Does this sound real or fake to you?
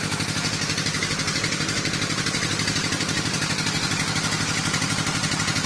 real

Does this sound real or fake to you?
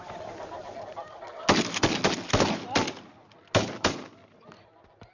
real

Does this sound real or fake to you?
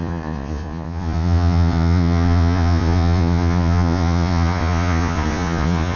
fake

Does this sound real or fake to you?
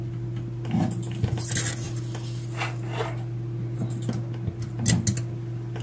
real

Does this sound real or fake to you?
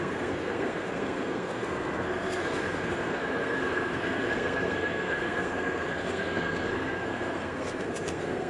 fake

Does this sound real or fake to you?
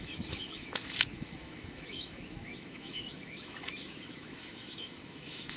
fake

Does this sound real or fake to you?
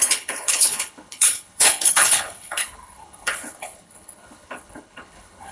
fake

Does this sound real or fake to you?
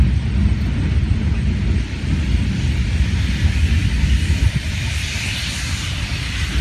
real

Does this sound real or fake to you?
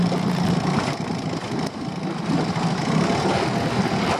real